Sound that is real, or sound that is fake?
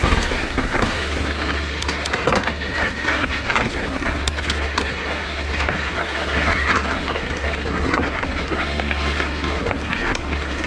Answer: fake